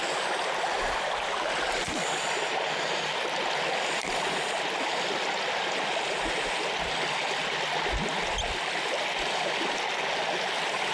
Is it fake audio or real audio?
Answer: real